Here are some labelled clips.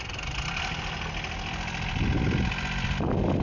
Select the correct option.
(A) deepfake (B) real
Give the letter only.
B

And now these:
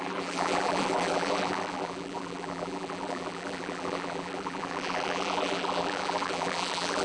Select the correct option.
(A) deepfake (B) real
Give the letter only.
A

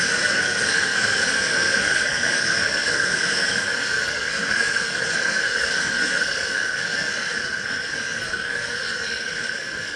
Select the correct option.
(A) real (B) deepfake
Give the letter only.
B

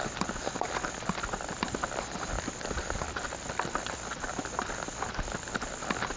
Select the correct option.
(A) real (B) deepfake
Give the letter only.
A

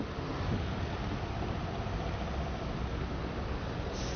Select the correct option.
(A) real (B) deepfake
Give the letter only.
A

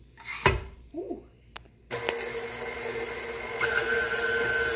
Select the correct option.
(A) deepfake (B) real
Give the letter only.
B